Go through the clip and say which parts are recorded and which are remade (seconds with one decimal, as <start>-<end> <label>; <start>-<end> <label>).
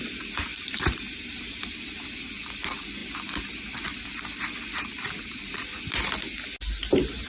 0.0-0.5 recorded; 0.5-1.6 remade; 1.6-7.3 recorded